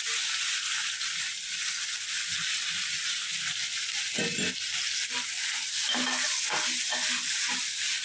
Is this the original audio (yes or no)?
yes